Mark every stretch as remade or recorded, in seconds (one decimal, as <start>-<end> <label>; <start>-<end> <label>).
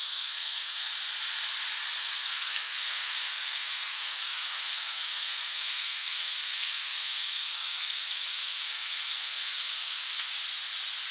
0.0-0.9 remade; 0.9-2.0 recorded; 2.0-10.3 remade; 10.3-11.1 recorded